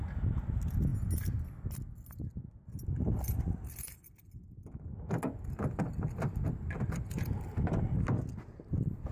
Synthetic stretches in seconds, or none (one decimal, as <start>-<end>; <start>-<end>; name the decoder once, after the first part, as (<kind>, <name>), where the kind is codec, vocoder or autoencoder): none